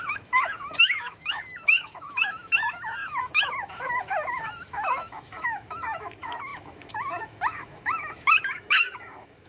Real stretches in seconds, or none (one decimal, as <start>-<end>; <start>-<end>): none